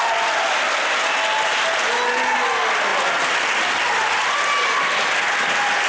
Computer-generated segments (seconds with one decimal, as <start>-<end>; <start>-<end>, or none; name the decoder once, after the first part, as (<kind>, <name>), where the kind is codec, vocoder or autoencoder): none